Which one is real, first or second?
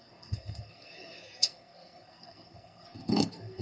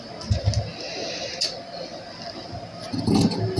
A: second